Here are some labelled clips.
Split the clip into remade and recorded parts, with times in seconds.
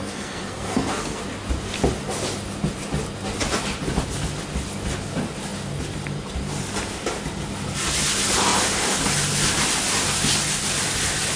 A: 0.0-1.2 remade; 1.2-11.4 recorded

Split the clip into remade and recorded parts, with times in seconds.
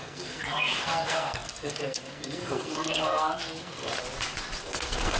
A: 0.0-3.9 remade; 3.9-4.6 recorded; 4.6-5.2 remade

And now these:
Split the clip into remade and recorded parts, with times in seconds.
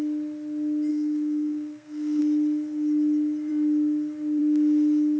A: 0.0-0.9 recorded; 0.9-2.2 remade; 2.2-5.2 recorded